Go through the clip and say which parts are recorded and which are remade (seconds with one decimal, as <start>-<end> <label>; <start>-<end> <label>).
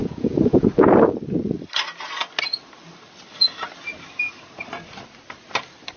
0.0-0.7 remade; 0.7-6.0 recorded